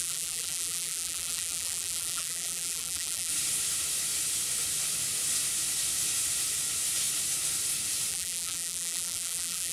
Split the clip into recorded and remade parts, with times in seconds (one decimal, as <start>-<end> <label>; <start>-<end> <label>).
0.0-3.3 remade; 3.3-8.1 recorded; 8.1-9.7 remade